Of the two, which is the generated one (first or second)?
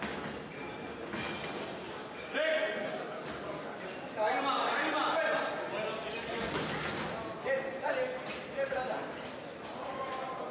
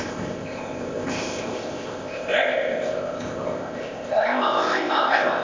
second